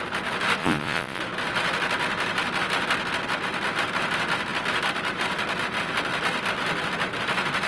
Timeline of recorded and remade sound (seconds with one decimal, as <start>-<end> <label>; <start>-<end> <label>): 0.0-0.6 recorded; 0.6-1.2 remade; 1.2-7.7 recorded